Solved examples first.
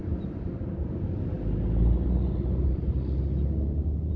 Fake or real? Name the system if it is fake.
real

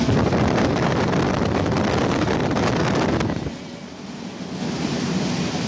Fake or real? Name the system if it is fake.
real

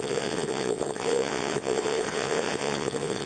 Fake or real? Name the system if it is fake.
fake, vocoder, WaveNeXt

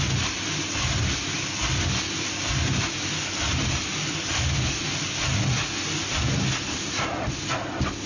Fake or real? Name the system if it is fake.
real